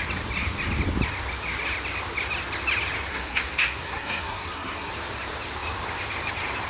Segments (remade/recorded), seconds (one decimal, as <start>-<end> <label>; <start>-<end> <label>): 0.0-3.1 recorded; 3.1-4.9 remade; 4.9-6.7 recorded